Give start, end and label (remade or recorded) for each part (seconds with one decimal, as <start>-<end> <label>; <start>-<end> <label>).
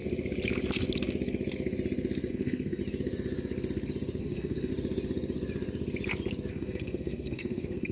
0.0-2.3 recorded; 2.3-2.8 remade; 2.8-4.2 recorded; 4.2-4.7 remade; 4.7-6.5 recorded; 6.5-7.9 remade